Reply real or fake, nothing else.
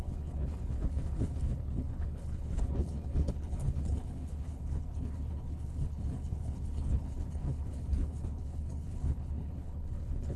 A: fake